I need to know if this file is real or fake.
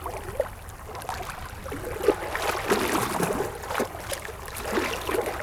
real